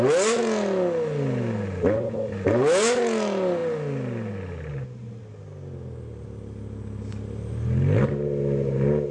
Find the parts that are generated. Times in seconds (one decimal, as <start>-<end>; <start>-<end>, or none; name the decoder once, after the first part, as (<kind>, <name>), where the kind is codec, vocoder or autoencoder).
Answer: none